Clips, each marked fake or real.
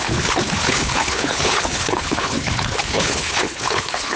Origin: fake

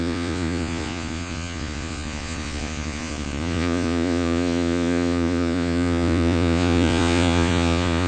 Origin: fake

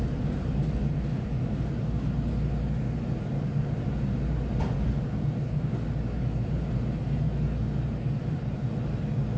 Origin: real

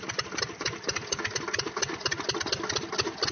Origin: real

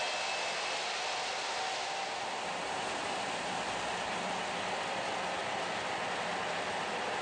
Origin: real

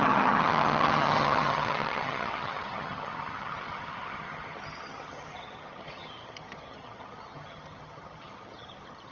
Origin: fake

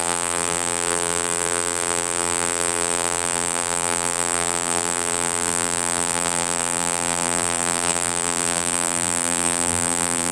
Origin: fake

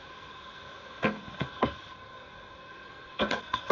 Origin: fake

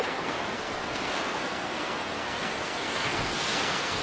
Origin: fake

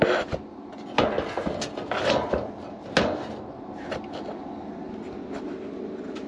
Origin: real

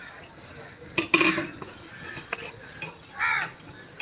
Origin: real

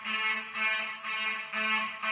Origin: real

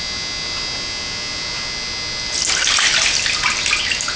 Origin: real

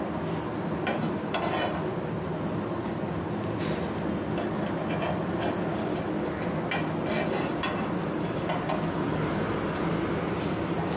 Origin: real